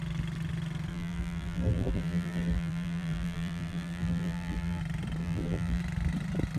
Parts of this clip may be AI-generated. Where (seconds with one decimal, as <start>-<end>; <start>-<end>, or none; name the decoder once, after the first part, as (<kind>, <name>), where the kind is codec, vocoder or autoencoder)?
0.9-4.8 (vocoder, BigVGAN v2); 5.2-5.8